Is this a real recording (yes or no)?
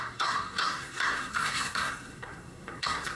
no